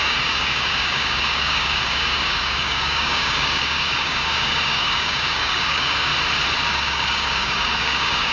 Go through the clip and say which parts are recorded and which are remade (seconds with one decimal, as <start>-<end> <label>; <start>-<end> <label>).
0.0-6.1 remade; 6.1-6.7 recorded; 6.7-8.3 remade